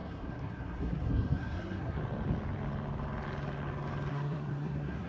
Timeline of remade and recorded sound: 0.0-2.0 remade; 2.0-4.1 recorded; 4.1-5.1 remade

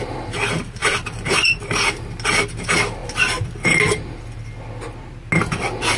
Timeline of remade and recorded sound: 0.0-0.8 recorded; 0.8-1.6 remade; 1.6-6.0 recorded

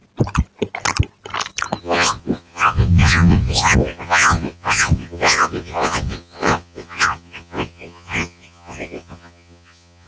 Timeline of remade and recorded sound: 0.0-1.8 recorded; 1.8-10.1 remade

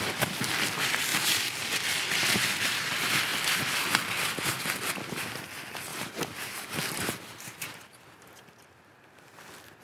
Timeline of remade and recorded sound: 0.0-5.9 recorded; 5.9-8.0 remade; 8.0-9.8 recorded

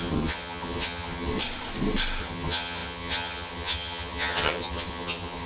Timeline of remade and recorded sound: 0.0-1.3 remade; 1.3-2.2 recorded; 2.2-5.5 remade

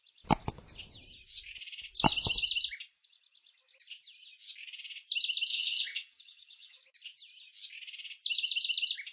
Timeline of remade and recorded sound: 0.0-5.5 recorded; 5.5-6.8 remade; 6.8-9.1 recorded

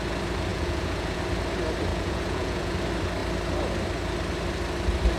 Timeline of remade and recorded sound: 0.0-0.5 recorded; 0.5-1.2 remade; 1.2-1.9 recorded; 1.9-2.7 remade; 2.7-5.2 recorded